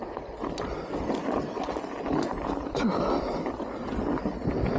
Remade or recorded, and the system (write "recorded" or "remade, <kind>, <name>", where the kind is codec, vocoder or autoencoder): recorded